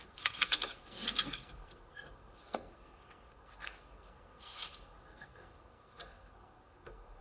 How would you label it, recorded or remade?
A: remade